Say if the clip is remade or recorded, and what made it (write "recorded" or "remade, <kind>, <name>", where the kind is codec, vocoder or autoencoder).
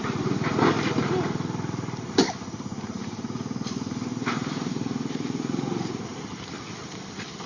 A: remade, vocoder, BigVGAN v2